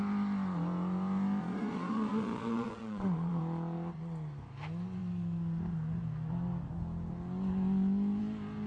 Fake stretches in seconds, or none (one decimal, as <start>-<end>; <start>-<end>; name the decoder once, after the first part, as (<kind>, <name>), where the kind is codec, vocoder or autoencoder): 1.4-3.4 (vocoder, Vocos)